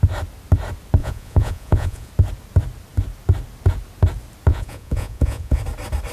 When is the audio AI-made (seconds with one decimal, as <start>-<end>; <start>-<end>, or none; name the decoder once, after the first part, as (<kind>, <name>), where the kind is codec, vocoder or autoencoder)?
1.0-2.1 (vocoder, Vocos); 4.5-5.6